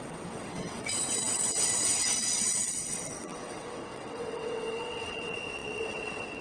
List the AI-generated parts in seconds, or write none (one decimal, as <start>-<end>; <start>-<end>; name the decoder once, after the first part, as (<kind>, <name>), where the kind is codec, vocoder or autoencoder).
0.0-6.4 (vocoder, WaveNeXt)